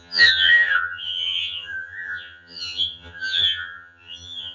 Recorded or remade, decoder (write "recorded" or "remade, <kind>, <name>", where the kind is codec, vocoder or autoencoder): remade, vocoder, HiFi-GAN